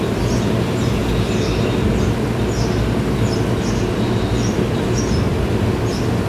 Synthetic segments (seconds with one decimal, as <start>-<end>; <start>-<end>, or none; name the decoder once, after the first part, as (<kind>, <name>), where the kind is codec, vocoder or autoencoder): none